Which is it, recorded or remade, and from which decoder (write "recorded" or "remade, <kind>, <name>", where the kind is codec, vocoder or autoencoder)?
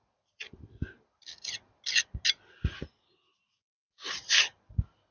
recorded